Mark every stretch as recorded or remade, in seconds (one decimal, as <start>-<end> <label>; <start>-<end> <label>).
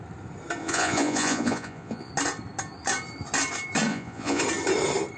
0.0-0.6 recorded; 0.6-2.1 remade; 2.1-3.9 recorded; 3.9-4.4 remade; 4.4-5.2 recorded